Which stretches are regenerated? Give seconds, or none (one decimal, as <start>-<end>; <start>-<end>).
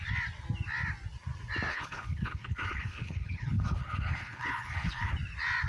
1.7-5.1